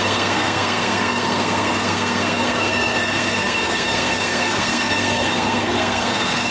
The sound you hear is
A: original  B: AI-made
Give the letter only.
B